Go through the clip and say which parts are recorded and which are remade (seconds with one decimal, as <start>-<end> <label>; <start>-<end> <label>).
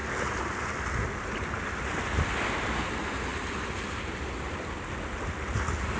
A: 0.0-6.0 recorded